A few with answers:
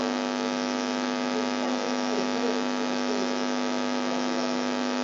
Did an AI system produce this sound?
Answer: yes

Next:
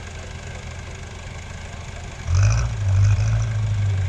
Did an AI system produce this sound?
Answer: no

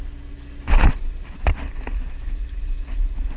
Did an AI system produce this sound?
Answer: no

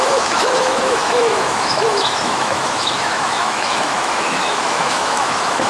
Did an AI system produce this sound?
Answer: yes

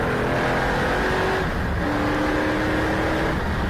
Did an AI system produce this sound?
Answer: no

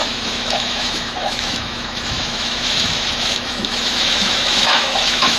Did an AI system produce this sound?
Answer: yes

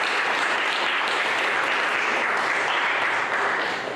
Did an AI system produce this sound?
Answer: no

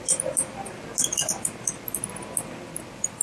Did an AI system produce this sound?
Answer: no